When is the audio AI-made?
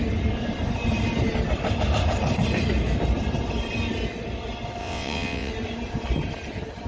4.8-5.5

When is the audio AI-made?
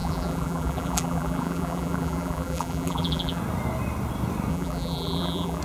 0.0-3.4; 4.5-5.6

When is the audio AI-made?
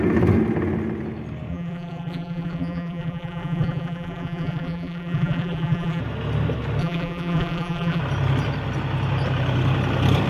1.5-6.0; 6.8-8.0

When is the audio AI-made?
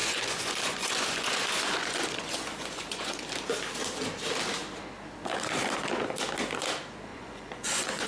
0.0-3.2; 7.1-8.1